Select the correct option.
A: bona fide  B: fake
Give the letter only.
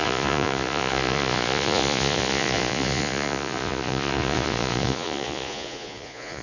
B